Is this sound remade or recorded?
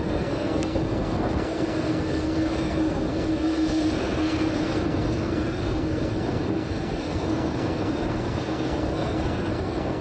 remade